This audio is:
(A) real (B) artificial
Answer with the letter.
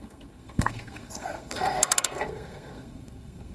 B